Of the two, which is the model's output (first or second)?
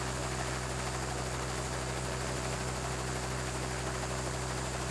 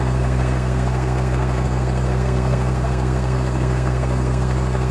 second